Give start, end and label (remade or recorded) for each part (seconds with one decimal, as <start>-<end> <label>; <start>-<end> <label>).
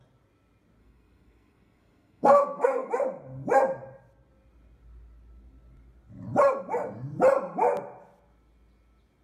0.0-0.8 recorded; 0.8-2.9 remade; 2.9-9.2 recorded